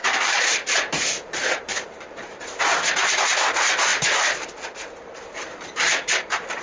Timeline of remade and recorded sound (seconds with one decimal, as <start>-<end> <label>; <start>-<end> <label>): 0.0-2.6 remade; 2.6-3.9 recorded; 3.9-6.6 remade